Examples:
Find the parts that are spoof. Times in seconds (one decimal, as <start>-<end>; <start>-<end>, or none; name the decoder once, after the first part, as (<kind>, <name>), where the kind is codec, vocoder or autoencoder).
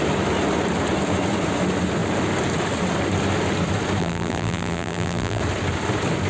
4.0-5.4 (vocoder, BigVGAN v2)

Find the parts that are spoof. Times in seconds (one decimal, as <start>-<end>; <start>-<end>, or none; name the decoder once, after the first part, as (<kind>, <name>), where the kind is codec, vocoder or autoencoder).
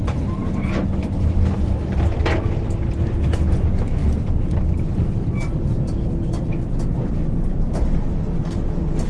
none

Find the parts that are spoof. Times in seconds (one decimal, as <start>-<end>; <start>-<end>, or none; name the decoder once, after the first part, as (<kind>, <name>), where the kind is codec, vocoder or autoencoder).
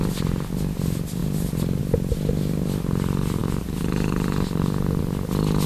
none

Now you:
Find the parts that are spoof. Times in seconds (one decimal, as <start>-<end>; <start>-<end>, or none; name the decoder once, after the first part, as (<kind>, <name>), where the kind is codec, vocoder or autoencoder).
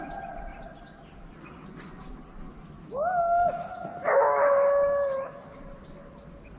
2.8-5.6 (autoencoder, DAC-VAE)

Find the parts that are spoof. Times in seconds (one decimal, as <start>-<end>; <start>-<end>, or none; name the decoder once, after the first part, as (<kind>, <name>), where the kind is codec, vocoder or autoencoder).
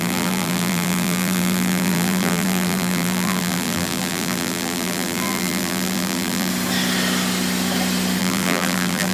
0.0-6.5 (vocoder, BigVGAN v2); 8.2-9.1